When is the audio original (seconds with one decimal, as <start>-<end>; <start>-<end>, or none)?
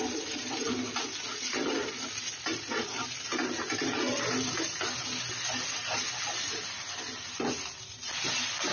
0.0-8.7